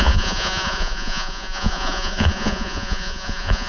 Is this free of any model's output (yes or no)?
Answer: no